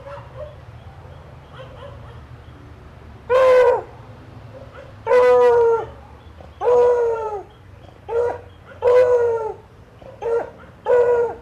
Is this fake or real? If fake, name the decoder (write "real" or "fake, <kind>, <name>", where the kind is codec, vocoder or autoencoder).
fake, vocoder, BigVGAN v2